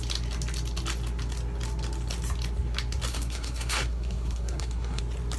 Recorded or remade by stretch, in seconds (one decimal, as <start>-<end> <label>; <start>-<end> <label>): 0.0-3.1 recorded; 3.1-5.0 remade; 5.0-5.4 recorded